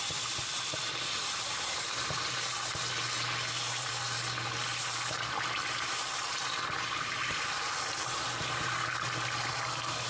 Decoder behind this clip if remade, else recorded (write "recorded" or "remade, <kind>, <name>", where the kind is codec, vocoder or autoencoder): remade, vocoder, BigVGAN v2